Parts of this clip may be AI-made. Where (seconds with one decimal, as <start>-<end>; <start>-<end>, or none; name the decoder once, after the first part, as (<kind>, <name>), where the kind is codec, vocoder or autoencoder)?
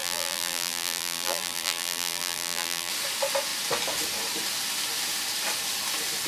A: 0.0-2.9 (vocoder, BigVGAN v2)